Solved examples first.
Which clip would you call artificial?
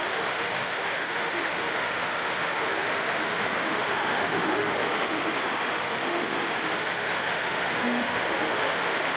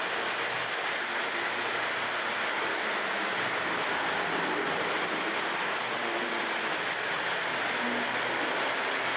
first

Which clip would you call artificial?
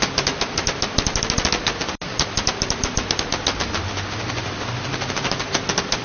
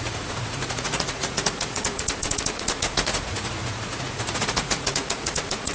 second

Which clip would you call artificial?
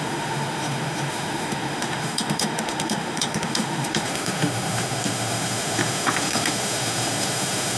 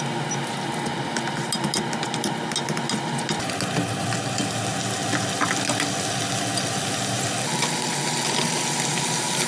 first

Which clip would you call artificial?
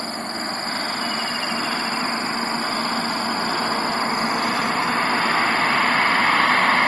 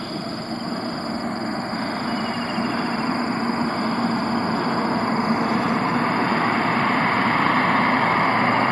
second